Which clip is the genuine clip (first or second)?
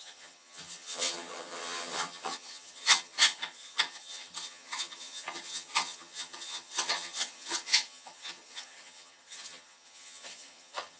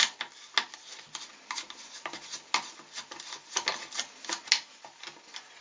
second